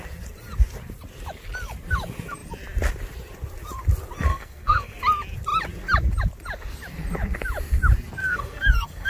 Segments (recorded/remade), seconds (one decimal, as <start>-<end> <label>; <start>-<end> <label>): 0.0-4.3 recorded; 4.3-5.0 remade; 5.0-8.2 recorded; 8.2-9.1 remade